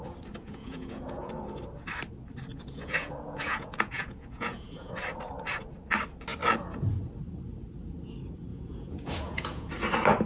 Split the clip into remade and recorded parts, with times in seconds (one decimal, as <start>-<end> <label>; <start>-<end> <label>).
0.0-0.4 recorded; 0.4-1.3 remade; 1.3-2.5 recorded; 2.5-4.9 remade; 4.9-8.5 recorded; 8.5-9.7 remade; 9.7-10.2 recorded